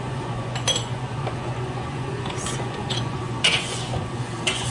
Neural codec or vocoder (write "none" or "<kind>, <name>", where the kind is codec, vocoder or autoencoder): vocoder, Vocos